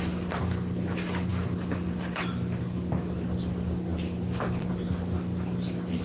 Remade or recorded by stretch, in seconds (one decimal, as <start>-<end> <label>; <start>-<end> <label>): 0.0-6.0 recorded